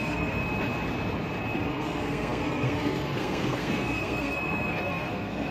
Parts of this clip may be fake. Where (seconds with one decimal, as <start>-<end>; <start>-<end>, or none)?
0.0-0.4; 1.7-5.5